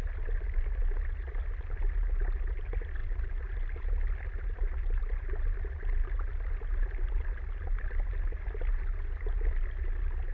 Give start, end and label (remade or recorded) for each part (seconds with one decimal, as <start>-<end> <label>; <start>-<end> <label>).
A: 0.0-10.3 recorded